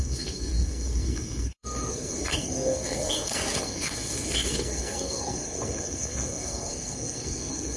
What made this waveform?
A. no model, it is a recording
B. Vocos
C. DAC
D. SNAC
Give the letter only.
D